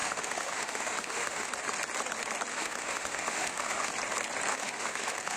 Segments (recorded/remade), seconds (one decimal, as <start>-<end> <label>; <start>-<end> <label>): 0.0-1.5 remade; 1.5-2.5 recorded; 2.5-3.9 remade; 3.9-4.5 recorded; 4.5-5.4 remade